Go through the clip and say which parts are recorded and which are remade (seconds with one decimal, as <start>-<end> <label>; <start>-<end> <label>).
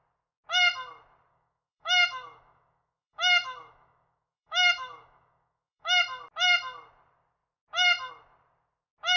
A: 0.0-1.3 recorded; 1.3-6.0 remade; 6.0-9.2 recorded